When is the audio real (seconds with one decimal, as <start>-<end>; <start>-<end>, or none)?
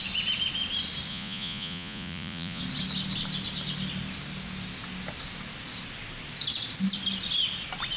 0.0-1.1; 2.6-8.0